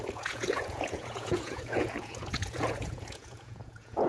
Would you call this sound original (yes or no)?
no